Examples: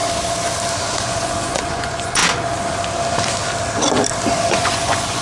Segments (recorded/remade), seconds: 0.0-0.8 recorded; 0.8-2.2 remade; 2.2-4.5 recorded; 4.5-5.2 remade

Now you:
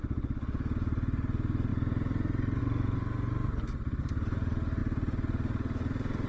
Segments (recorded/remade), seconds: 0.0-6.3 recorded

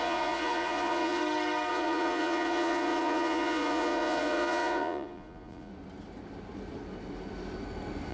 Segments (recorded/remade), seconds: 0.0-1.2 remade; 1.2-1.7 recorded; 1.7-5.7 remade; 5.7-8.1 recorded

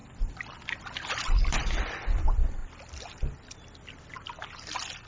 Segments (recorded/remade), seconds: 0.0-2.6 remade; 2.6-3.9 recorded; 3.9-5.1 remade